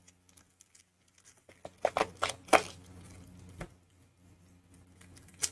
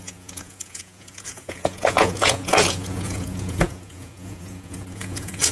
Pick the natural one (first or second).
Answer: first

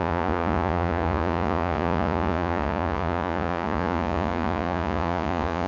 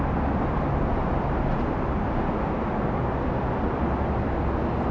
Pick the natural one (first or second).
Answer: second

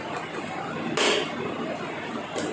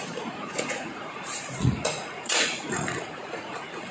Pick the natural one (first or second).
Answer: first